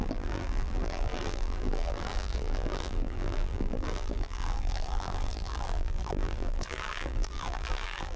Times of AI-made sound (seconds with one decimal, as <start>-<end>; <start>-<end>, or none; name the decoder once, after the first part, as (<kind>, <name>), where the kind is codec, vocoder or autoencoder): 0.0-8.2 (vocoder, BigVGAN v2)